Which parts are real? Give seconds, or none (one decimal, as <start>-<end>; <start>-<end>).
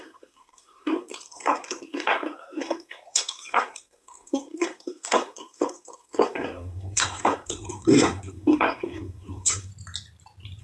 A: 9.7-10.6